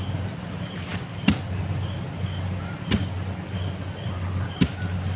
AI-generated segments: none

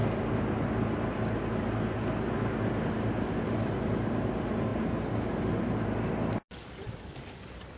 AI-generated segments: none

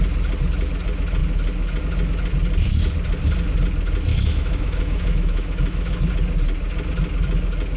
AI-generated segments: 4.1-6.1 (autoencoder, DAC-VAE)